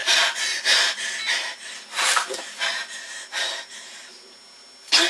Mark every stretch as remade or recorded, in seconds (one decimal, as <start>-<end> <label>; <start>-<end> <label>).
0.0-3.1 remade; 3.1-5.1 recorded